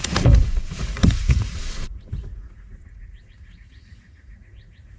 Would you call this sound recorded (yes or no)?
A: no